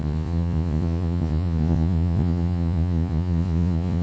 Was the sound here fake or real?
fake